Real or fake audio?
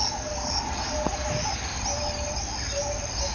real